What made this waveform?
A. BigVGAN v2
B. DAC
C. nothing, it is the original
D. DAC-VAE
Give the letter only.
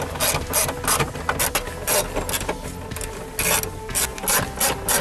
C